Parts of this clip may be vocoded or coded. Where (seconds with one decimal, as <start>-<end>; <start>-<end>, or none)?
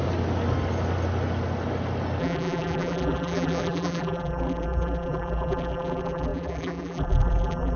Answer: 2.2-7.8